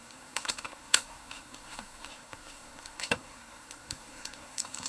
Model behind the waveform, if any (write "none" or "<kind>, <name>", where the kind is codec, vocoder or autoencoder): codec, SNAC